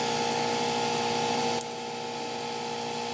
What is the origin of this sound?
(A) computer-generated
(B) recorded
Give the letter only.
B